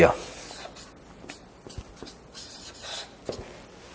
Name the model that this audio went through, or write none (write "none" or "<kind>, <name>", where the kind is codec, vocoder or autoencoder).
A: none